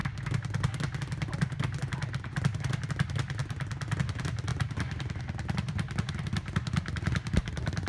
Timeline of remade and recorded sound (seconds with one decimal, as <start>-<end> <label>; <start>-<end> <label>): 0.0-7.9 recorded